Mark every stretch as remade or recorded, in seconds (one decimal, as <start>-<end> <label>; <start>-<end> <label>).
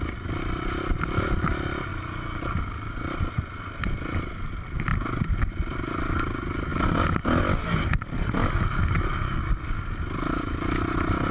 0.0-11.3 recorded